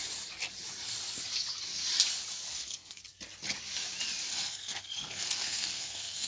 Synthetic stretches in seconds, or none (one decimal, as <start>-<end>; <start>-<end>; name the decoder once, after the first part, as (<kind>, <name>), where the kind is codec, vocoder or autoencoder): 2.5-3.0 (codec, SNAC); 4.3-6.3